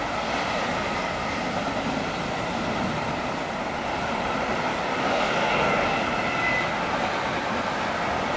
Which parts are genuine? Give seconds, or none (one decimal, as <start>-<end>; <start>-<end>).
0.0-0.6; 1.1-4.7; 6.1-8.4